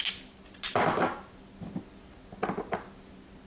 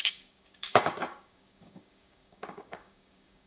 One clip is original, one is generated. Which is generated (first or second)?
second